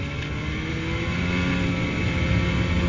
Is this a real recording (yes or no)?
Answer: yes